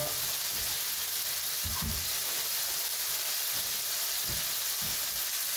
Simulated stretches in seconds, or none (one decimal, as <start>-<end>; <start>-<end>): 2.1-5.6